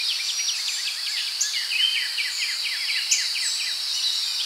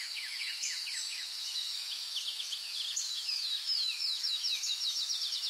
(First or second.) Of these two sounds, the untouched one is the first